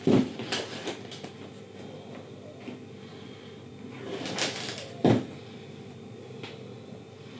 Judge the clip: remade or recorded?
remade